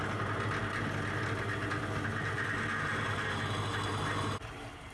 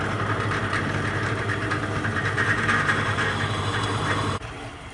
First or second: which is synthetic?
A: second